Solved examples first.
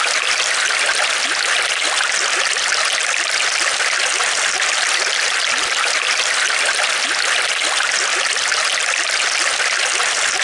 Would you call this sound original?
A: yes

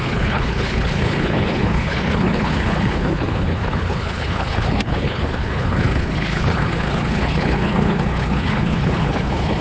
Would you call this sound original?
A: no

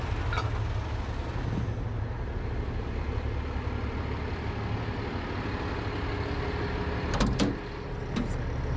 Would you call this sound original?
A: yes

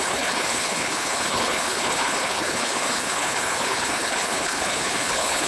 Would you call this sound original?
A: no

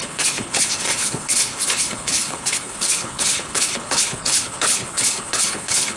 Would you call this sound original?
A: no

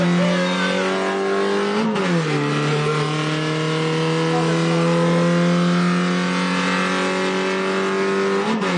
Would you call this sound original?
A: yes